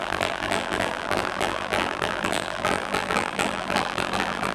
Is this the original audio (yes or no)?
no